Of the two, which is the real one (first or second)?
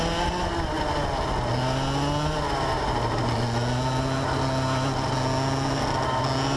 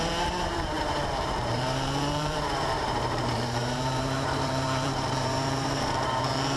first